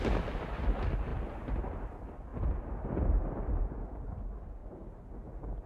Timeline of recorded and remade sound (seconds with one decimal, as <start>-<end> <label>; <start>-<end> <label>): 0.0-2.3 recorded; 2.3-3.7 remade; 3.7-4.6 recorded; 4.6-5.3 remade; 5.3-5.7 recorded